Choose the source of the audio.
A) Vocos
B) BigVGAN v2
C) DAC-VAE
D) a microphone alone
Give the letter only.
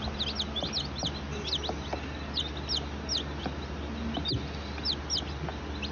D